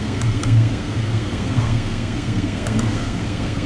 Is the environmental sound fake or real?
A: fake